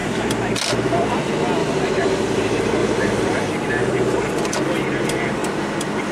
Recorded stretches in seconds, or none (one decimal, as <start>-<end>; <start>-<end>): 0.0-1.6; 2.2-2.8; 3.4-6.1